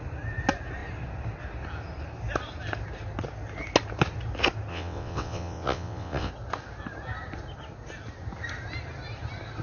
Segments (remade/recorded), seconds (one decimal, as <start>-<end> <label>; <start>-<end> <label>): 0.0-4.7 recorded; 4.7-6.3 remade; 6.3-9.6 recorded